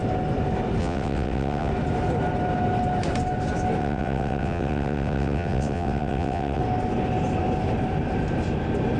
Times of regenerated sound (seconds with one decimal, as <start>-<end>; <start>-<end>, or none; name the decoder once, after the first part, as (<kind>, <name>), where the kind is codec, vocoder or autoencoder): 0.8-1.7 (vocoder, WaveNeXt); 3.8-6.6